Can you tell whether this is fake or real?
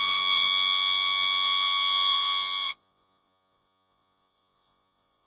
fake